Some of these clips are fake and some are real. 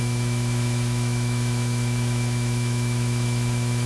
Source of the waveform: fake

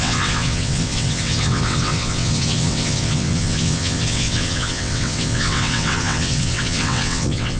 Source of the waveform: fake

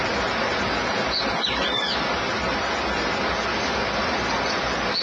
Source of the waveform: real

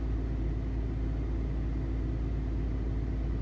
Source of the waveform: real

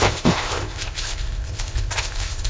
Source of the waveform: fake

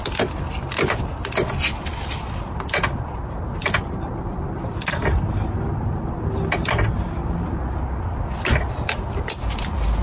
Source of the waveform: real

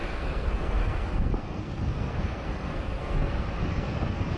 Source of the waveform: fake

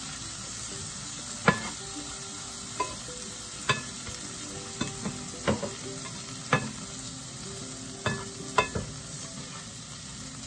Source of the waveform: real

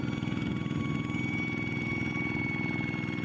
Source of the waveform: real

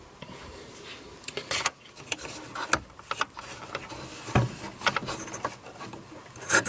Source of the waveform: real